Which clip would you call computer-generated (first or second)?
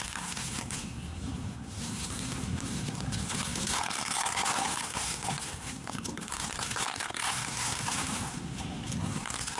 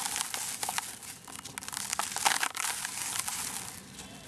first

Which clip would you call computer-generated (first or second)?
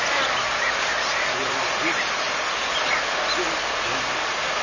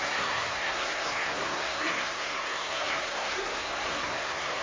second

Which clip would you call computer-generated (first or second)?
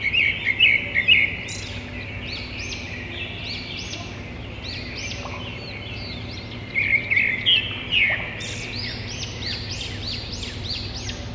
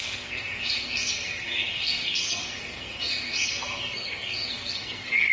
second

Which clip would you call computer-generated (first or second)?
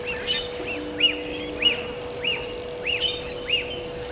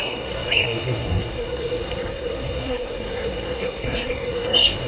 second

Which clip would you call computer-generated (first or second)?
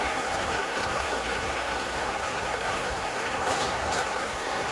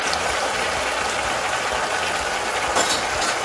first